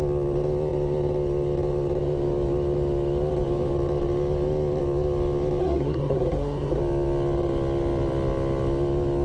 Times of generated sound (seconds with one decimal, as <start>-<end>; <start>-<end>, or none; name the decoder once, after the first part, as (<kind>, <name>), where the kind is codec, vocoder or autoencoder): 5.6-6.8 (codec, SNAC)